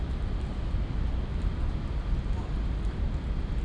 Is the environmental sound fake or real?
real